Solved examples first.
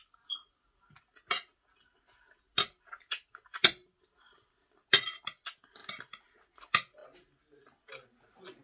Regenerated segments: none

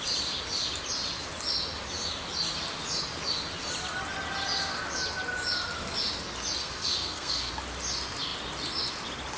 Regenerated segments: 6.6-7.5 (codec, SNAC)

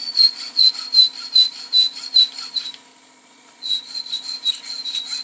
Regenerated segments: 0.0-0.7 (vocoder, Vocos); 2.9-4.2

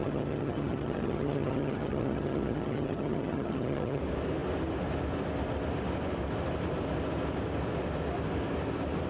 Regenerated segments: 0.0-4.0 (vocoder, HiFi-GAN)

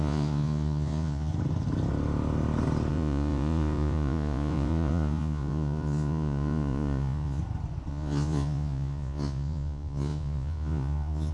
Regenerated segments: 0.0-1.3 (vocoder, Vocos); 2.9-7.4; 7.9-11.3

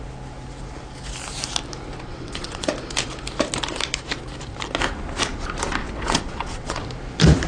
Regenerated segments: 2.1-2.7 (vocoder, WaveNeXt); 5.8-6.8